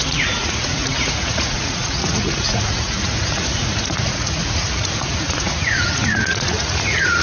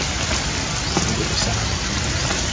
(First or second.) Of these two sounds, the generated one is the first